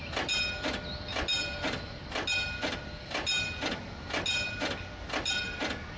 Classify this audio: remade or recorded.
recorded